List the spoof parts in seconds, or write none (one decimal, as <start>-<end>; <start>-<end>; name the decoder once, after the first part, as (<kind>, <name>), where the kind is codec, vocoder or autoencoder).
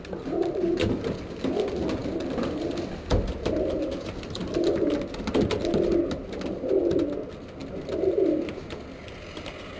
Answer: none